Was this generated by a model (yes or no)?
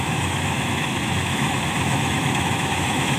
yes